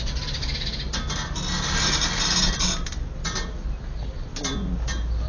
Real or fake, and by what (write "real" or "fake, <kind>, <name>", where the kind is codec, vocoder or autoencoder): real